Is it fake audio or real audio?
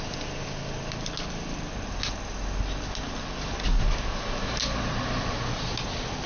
real